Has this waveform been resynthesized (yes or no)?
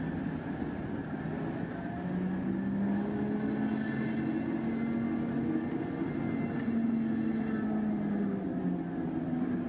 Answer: no